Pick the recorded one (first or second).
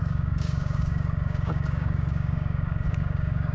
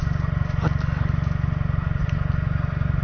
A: second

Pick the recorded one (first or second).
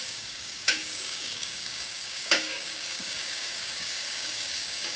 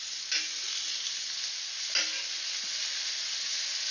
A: second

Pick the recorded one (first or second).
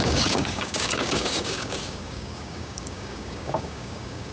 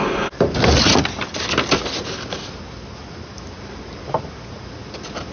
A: second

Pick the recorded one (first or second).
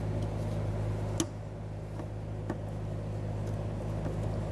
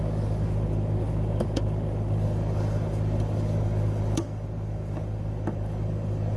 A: first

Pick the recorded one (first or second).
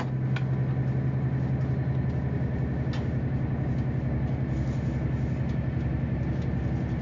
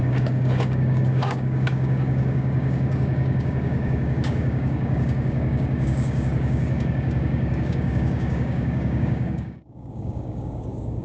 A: first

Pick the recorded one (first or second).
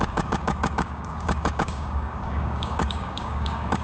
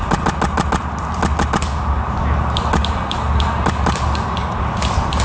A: second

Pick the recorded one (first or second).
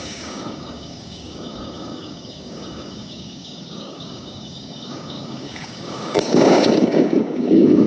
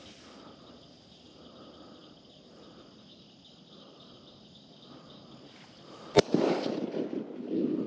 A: second